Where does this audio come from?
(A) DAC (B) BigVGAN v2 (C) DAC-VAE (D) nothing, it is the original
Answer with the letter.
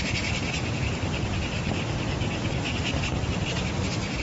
D